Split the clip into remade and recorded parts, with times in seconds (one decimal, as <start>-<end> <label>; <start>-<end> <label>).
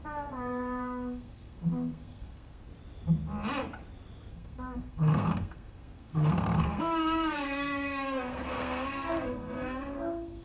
0.0-2.7 remade; 2.7-4.3 recorded; 4.3-10.4 remade